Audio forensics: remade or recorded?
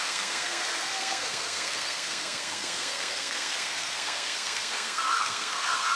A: remade